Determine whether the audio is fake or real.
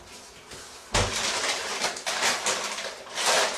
real